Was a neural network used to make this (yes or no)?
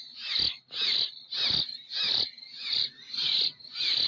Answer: no